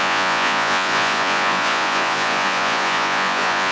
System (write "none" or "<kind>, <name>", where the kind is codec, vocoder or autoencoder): vocoder, Vocos